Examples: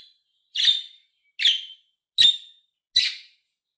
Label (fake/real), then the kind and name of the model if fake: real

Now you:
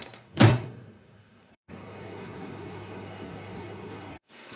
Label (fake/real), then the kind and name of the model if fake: fake, codec, SNAC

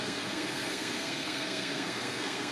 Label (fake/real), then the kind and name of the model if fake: fake, codec, SNAC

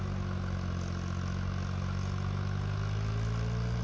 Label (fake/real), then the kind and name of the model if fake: real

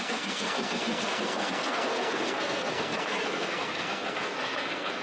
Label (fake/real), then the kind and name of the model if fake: fake, codec, SNAC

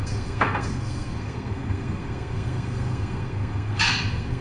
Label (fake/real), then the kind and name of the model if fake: fake, codec, SNAC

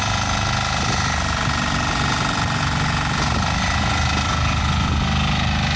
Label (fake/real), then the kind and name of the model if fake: real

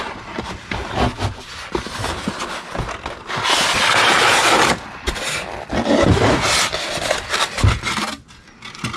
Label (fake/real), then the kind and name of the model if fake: real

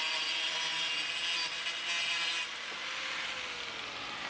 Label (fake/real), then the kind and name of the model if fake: real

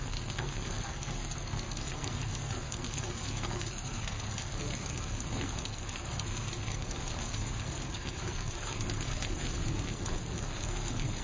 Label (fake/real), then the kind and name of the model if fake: fake, codec, SNAC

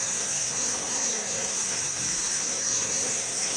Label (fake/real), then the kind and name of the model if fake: fake, codec, SNAC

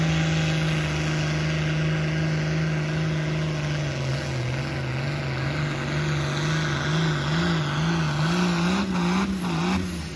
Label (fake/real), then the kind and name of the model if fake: real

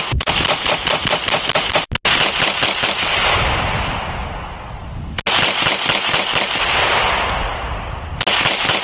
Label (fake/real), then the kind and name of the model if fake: real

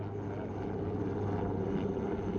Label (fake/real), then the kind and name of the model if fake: real